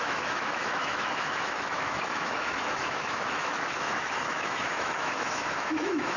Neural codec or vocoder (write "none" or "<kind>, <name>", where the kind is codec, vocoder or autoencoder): autoencoder, DAC-VAE